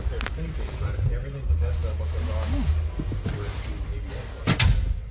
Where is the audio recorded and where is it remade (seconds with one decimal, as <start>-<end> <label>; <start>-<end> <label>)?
0.0-5.1 recorded